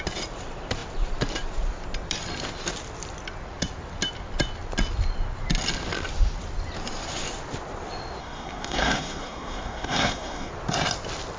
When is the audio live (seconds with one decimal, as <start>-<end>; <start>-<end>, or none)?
0.0-8.2; 10.5-11.4